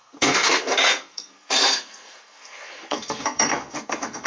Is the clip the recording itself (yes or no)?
no